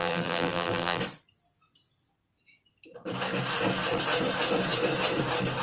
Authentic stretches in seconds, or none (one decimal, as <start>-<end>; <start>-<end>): 1.0-5.6